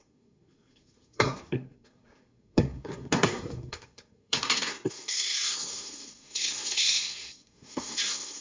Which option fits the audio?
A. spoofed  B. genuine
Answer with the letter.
A